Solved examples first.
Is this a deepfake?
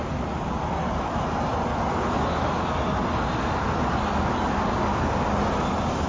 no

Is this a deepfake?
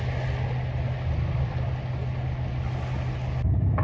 no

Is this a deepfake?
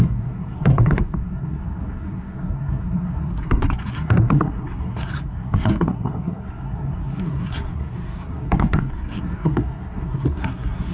yes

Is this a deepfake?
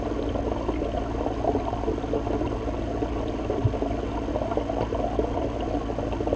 no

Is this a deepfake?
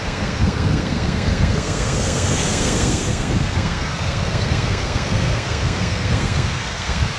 yes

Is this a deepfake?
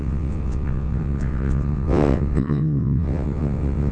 yes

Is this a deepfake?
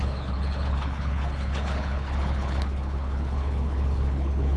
yes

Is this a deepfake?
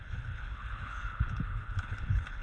yes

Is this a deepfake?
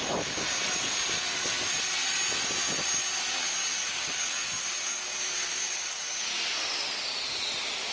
no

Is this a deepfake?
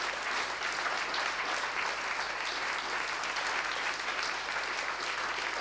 no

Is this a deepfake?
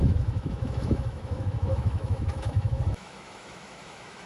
yes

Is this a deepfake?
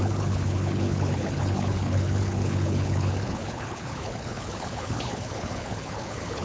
yes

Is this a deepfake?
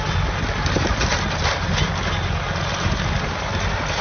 no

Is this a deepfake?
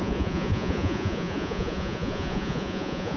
yes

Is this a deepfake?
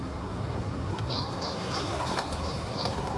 yes